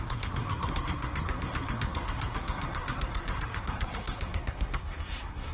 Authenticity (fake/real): fake